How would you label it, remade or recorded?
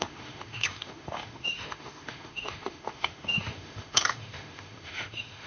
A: remade